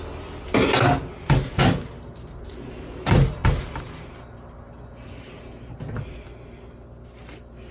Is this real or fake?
real